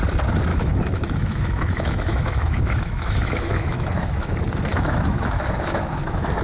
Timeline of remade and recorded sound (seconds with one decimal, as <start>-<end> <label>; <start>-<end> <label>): 0.0-0.5 recorded; 0.5-4.3 remade; 4.3-4.7 recorded; 4.7-6.4 remade